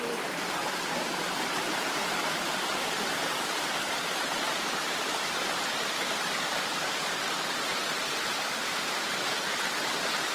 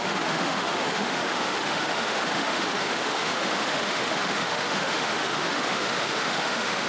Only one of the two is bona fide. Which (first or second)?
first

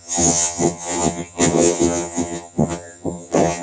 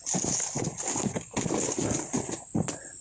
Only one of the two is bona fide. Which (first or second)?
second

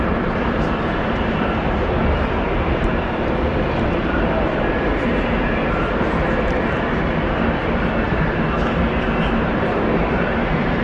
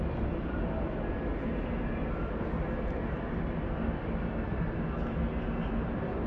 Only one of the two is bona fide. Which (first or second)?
second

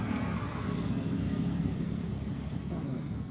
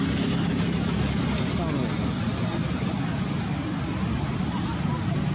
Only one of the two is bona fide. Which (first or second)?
second